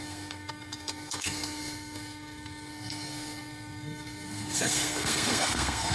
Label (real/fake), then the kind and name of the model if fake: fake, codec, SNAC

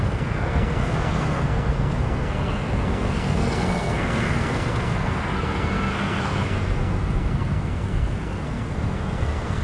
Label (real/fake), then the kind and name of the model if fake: fake, codec, SNAC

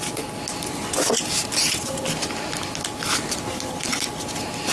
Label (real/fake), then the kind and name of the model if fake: real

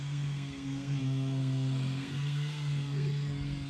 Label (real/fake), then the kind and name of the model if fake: fake, codec, SNAC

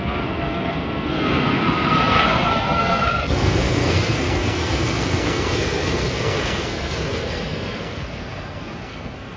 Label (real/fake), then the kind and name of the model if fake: fake, codec, SNAC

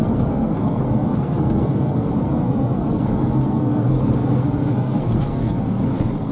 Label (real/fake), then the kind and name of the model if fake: fake, codec, SNAC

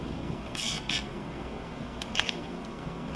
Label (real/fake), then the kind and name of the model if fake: fake, codec, SNAC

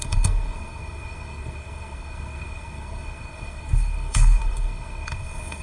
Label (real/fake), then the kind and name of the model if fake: fake, codec, SNAC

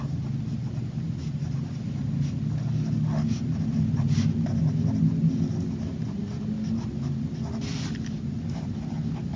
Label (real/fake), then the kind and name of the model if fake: real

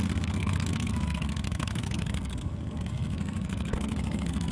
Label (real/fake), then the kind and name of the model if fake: fake, codec, SNAC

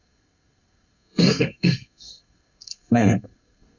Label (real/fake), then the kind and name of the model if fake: fake, codec, SNAC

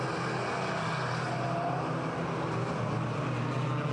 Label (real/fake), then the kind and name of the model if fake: real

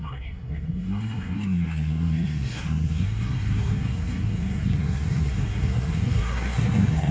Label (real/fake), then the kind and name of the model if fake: fake, codec, SNAC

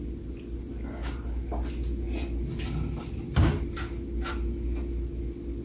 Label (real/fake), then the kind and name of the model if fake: real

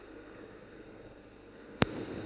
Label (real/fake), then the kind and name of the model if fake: fake, codec, SNAC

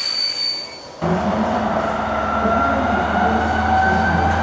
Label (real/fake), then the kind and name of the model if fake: real